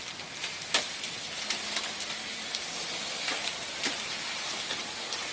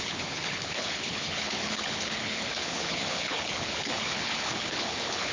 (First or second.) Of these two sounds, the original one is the first